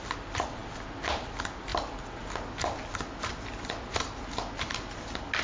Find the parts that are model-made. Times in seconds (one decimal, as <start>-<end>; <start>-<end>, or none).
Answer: none